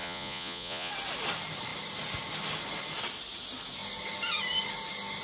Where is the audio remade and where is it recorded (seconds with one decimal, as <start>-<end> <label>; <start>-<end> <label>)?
0.0-0.9 remade; 0.9-5.2 recorded